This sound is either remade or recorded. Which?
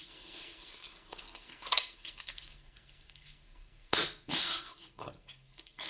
remade